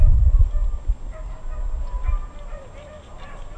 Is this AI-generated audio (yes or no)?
no